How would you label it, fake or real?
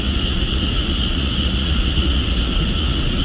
fake